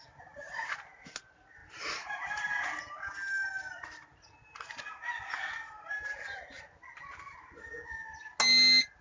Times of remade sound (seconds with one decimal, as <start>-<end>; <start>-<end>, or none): 1.6-2.6